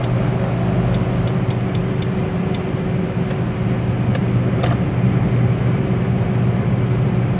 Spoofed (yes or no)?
no